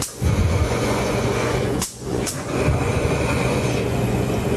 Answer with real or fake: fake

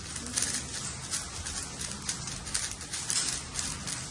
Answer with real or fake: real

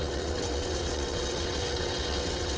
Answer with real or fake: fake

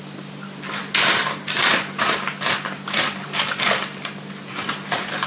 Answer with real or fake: real